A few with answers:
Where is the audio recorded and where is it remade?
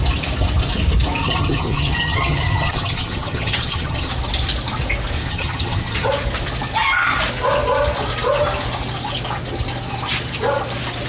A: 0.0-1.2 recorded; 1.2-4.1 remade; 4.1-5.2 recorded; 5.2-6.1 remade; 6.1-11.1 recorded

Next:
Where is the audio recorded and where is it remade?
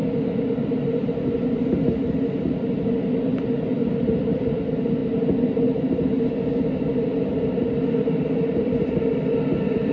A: 0.0-9.9 recorded